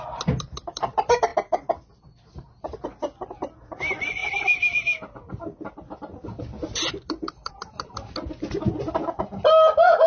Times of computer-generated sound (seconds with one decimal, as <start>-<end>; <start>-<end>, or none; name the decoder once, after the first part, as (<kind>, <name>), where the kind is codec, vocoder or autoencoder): 3.0-3.7 (vocoder, BigVGAN v2); 4.2-7.5